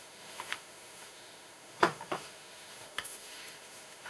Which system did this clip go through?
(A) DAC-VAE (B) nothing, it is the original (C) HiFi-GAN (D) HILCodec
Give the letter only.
A